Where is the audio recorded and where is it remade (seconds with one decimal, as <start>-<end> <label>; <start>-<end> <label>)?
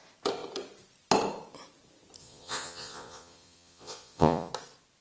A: 0.0-2.2 recorded; 2.2-4.5 remade; 4.5-5.0 recorded